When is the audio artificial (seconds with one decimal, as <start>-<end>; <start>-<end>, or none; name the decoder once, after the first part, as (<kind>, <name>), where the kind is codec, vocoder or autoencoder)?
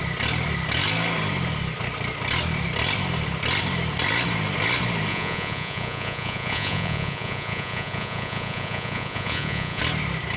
5.1-9.8 (vocoder, Vocos)